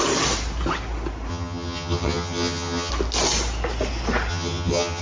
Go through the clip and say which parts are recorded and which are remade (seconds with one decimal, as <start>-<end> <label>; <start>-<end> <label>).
0.0-1.3 recorded; 1.3-2.9 remade; 2.9-4.3 recorded; 4.3-5.0 remade